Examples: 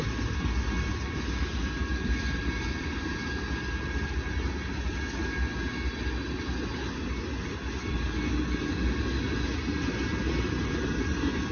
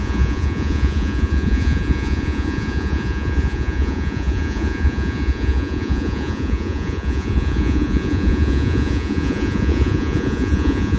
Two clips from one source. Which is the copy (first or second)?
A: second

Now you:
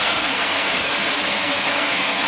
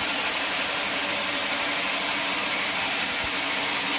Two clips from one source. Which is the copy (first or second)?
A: first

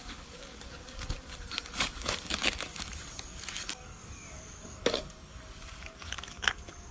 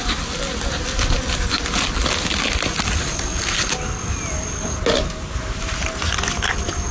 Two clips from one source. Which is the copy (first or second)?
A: first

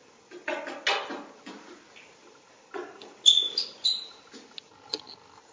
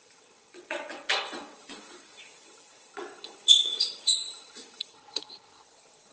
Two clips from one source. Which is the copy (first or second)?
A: second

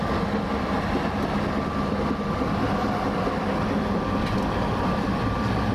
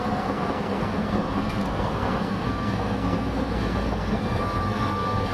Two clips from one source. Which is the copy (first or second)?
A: second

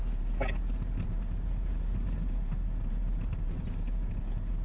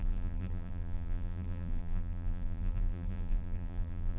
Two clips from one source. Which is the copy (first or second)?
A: second